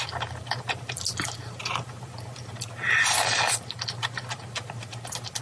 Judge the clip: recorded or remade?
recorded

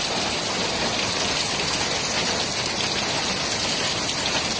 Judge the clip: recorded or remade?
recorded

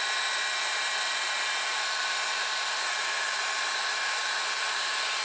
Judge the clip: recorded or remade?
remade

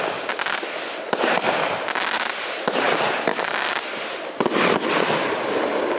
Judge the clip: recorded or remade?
recorded